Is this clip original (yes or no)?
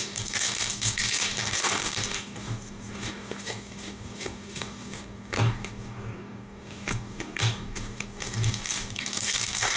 no